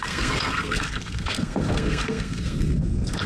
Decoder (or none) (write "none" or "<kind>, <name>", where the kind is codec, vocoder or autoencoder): codec, SNAC